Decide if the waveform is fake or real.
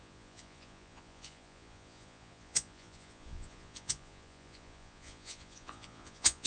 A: fake